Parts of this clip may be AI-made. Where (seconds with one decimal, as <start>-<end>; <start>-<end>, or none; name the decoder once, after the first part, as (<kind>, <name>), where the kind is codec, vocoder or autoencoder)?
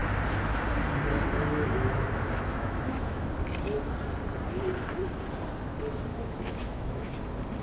1.5-3.3 (autoencoder, DAC-VAE); 6.1-7.1